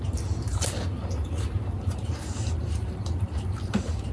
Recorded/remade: remade